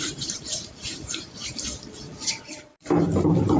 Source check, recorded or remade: remade